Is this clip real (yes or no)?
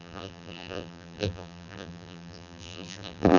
no